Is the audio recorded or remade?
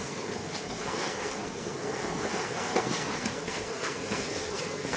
remade